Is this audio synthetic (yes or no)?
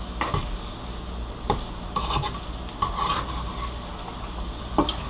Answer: no